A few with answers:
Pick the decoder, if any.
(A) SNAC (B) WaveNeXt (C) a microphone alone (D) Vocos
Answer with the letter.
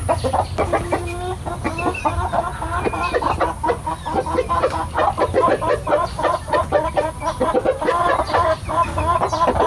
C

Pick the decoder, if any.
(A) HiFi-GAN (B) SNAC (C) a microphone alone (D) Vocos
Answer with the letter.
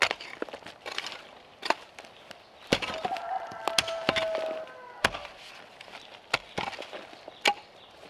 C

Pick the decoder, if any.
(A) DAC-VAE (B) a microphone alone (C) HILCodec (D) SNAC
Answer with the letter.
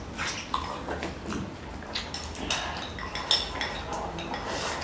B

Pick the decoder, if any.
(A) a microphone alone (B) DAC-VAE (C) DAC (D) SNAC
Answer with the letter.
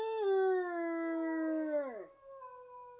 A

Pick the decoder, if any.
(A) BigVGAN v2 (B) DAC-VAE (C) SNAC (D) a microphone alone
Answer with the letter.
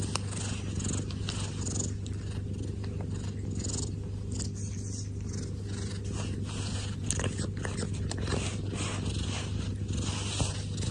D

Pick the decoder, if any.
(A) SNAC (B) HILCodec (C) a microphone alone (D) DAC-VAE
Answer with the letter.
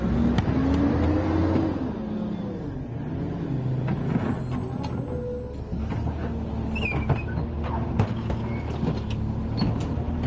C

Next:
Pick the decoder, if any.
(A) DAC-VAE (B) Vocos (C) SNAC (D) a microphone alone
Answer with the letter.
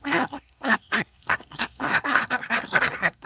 C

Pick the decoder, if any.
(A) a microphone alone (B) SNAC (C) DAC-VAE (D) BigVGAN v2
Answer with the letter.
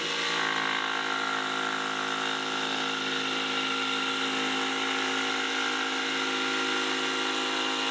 A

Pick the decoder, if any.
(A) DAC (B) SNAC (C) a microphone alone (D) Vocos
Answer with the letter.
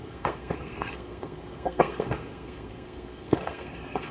B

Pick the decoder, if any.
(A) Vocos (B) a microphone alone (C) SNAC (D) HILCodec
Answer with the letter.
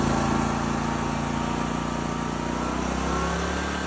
B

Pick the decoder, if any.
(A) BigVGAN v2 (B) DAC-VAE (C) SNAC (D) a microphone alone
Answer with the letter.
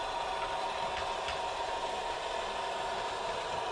D